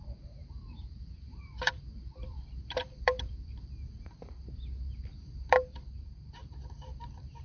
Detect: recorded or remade remade